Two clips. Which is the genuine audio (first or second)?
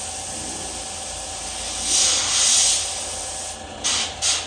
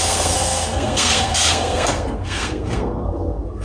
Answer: first